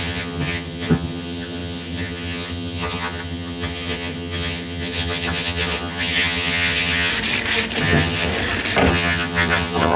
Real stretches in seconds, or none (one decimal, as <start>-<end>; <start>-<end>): 7.1-7.8; 8.3-8.9